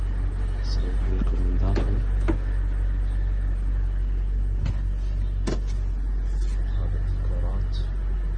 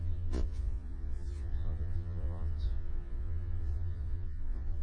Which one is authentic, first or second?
first